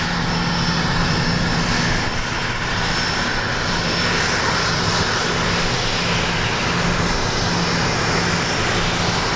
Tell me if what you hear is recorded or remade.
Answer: recorded